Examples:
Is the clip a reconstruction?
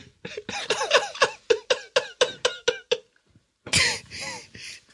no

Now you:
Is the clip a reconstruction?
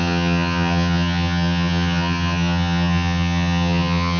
yes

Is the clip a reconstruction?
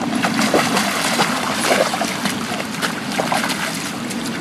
no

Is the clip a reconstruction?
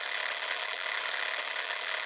yes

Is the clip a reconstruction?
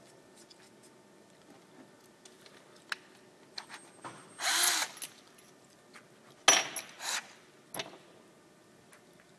no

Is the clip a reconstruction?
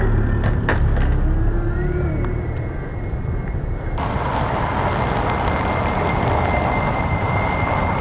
no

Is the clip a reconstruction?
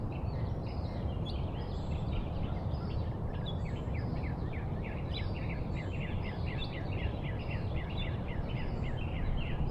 yes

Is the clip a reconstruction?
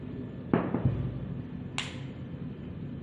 no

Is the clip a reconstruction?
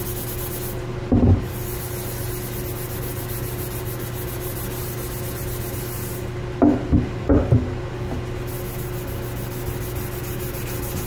no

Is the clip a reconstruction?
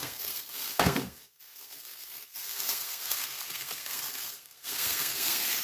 yes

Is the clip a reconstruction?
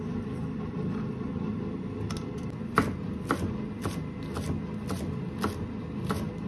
no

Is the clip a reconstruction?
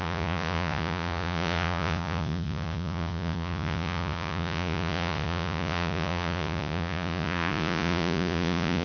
yes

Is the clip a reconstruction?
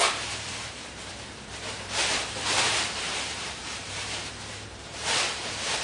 yes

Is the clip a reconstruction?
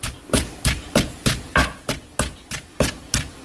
no